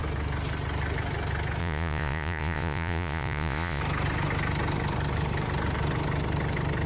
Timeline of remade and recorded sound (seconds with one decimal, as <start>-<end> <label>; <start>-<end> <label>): 0.0-1.6 recorded; 1.6-3.8 remade; 3.8-6.9 recorded